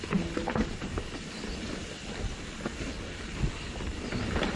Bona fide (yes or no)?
yes